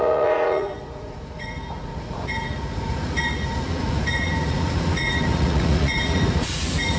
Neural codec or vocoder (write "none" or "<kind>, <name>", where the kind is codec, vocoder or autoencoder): vocoder, Vocos